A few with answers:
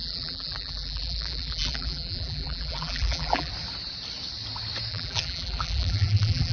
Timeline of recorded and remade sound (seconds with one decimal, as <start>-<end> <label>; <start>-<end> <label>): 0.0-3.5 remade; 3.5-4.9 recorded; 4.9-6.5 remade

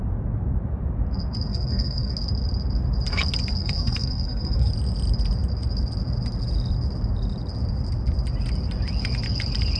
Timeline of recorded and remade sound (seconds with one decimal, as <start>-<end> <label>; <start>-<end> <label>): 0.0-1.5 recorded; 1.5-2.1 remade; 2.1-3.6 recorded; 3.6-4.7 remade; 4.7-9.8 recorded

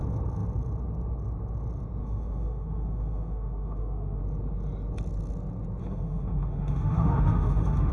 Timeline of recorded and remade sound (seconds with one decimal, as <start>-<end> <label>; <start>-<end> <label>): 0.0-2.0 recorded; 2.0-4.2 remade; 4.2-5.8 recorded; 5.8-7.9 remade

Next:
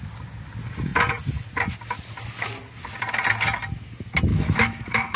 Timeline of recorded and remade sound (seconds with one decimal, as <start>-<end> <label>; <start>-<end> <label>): 0.0-4.3 recorded; 4.3-5.2 remade

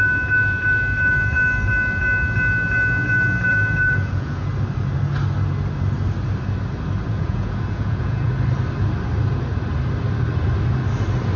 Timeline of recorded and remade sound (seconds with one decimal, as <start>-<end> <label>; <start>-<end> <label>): 0.0-3.5 recorded; 3.5-4.5 remade; 4.5-7.1 recorded; 7.1-8.3 remade; 8.3-11.4 recorded